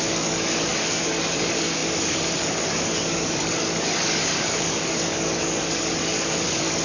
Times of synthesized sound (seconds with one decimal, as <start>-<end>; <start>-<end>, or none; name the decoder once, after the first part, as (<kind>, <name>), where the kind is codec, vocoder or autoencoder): 0.0-6.8 (codec, DAC)